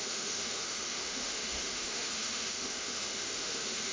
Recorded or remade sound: remade